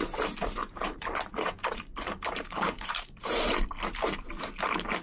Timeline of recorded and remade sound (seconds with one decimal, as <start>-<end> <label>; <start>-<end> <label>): 0.0-0.6 recorded; 0.6-3.6 remade; 3.6-5.0 recorded